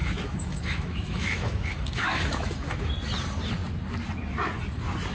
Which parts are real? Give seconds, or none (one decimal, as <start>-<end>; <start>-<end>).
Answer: 2.9-5.1